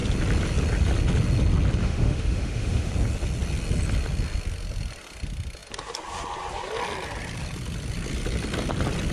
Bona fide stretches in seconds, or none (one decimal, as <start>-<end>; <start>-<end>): 0.0-1.8; 2.9-9.1